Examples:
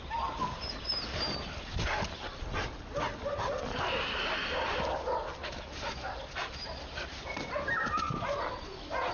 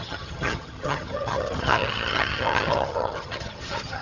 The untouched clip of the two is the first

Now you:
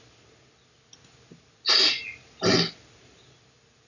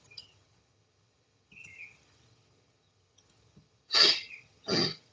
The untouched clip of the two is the first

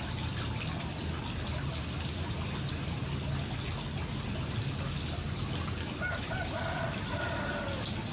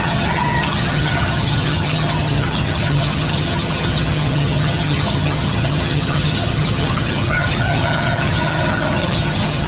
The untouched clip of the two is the first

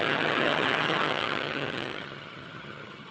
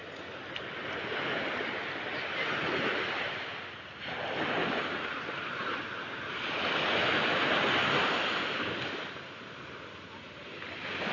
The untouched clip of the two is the second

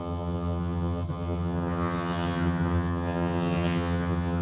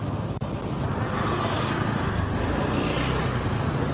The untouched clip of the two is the second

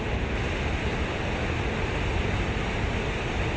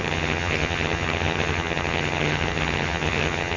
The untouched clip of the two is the first